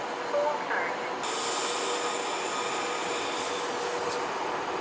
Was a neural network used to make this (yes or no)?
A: no